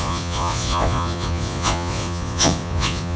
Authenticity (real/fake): fake